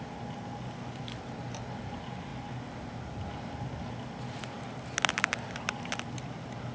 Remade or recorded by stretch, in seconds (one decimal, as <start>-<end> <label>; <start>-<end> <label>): 0.0-6.7 recorded